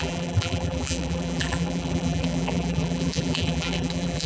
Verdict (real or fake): fake